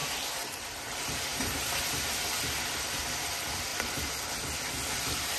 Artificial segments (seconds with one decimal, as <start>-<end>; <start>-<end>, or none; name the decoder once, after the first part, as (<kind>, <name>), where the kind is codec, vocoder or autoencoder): 0.0-0.6 (vocoder, BigVGAN v2); 1.3-1.8